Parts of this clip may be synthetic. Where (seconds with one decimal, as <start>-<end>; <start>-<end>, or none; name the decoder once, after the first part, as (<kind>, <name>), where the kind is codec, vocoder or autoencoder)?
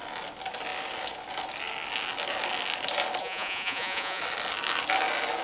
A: 3.2-4.2 (vocoder, Vocos)